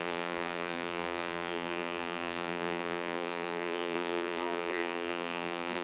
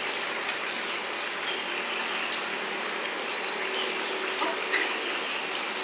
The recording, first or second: second